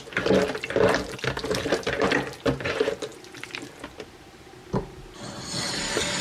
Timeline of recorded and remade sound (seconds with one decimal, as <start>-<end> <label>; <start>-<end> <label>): 0.0-6.2 recorded